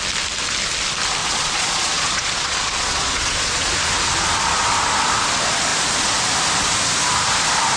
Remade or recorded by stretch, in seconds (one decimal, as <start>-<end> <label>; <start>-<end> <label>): 0.0-1.2 recorded; 1.2-3.7 remade; 3.7-7.8 recorded